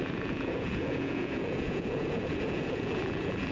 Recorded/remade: remade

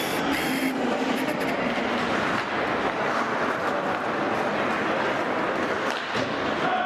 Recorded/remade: recorded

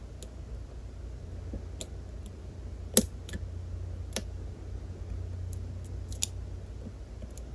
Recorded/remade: recorded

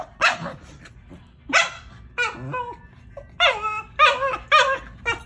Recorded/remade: recorded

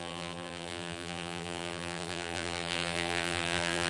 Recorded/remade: remade